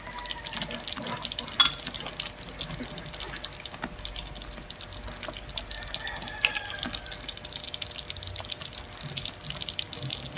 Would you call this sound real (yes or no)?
yes